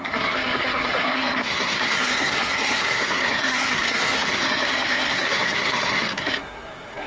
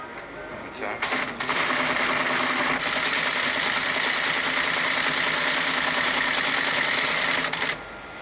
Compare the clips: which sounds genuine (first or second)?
second